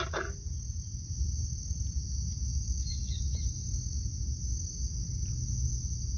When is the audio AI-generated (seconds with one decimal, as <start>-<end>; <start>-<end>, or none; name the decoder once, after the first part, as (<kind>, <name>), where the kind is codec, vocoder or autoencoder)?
2.5-3.2 (autoencoder, DAC-VAE)